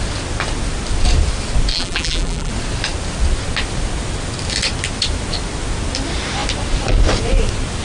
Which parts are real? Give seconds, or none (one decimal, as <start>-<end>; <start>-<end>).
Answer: 0.0-1.7; 2.5-7.8